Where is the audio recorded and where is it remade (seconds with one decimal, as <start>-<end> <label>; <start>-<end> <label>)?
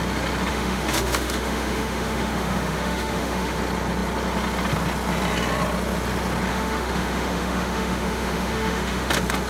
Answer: 0.0-0.5 recorded; 0.5-3.6 remade; 3.6-6.5 recorded; 6.5-9.1 remade; 9.1-9.5 recorded